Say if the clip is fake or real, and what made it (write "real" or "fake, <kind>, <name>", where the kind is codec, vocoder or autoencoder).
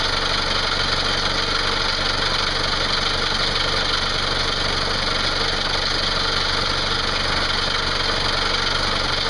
real